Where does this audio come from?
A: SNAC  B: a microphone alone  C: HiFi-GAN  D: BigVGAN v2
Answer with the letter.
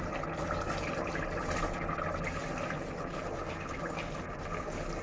B